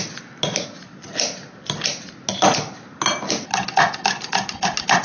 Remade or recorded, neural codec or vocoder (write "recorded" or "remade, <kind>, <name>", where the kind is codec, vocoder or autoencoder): recorded